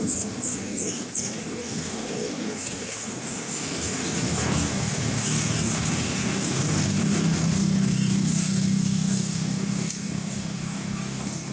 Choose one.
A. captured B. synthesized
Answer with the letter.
B